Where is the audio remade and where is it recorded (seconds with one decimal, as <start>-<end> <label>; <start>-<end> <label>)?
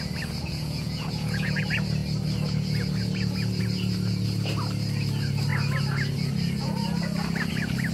0.0-0.4 recorded; 0.4-1.6 remade; 1.6-7.9 recorded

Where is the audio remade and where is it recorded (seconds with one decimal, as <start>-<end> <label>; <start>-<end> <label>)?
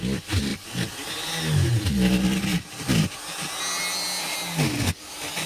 0.0-5.5 recorded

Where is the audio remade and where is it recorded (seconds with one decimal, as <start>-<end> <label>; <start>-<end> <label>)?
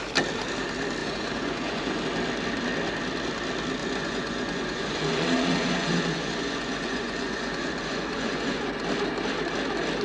0.0-1.0 recorded; 1.0-2.0 remade; 2.0-3.8 recorded; 3.8-8.7 remade; 8.7-10.0 recorded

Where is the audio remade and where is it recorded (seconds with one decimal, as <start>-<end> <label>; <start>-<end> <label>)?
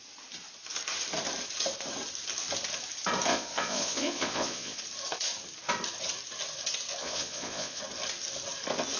0.0-3.3 recorded; 3.3-4.8 remade; 4.8-7.0 recorded; 7.0-7.8 remade; 7.8-9.0 recorded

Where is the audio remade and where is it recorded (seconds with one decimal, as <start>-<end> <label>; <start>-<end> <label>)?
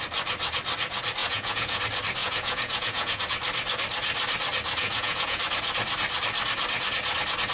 0.0-1.2 recorded; 1.2-1.8 remade; 1.8-2.2 recorded; 2.2-3.2 remade; 3.2-4.8 recorded; 4.8-5.4 remade; 5.4-7.5 recorded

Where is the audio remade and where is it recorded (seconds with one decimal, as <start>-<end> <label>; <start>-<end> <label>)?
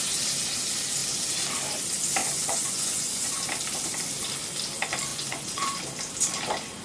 0.0-2.2 recorded; 2.2-3.4 remade; 3.4-5.1 recorded; 5.1-5.8 remade; 5.8-6.8 recorded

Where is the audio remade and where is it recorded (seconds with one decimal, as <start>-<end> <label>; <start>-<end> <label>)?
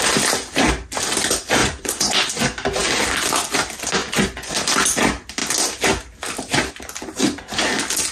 0.0-1.6 recorded; 1.6-2.3 remade; 2.3-4.0 recorded; 4.0-4.5 remade; 4.5-8.1 recorded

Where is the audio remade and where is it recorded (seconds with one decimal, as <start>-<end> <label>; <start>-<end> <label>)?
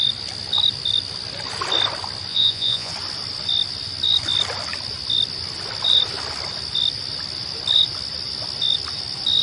0.0-2.3 recorded; 2.3-2.9 remade; 2.9-9.4 recorded